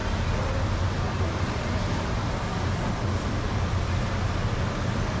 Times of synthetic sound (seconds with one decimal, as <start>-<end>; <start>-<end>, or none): none